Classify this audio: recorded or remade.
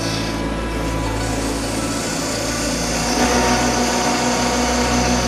recorded